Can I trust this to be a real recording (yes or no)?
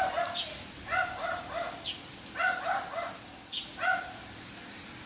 yes